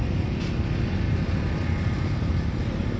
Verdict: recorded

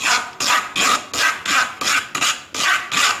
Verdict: recorded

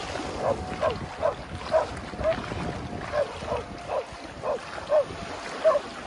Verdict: recorded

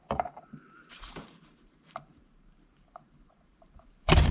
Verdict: remade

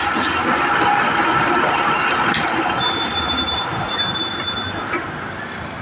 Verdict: recorded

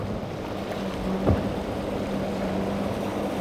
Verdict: recorded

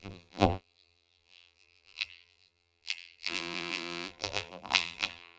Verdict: remade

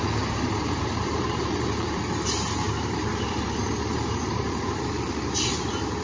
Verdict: remade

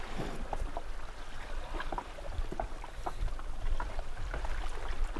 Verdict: remade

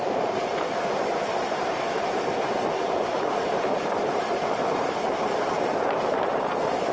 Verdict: remade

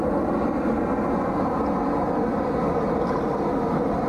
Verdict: recorded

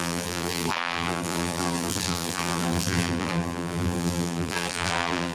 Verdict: remade